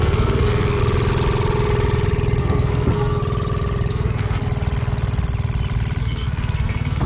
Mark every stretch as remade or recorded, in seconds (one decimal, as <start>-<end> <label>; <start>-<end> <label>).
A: 0.0-0.8 remade; 0.8-2.4 recorded; 2.4-3.2 remade; 3.2-3.9 recorded; 3.9-4.4 remade; 4.4-6.0 recorded; 6.0-7.1 remade